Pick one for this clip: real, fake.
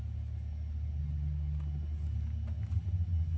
real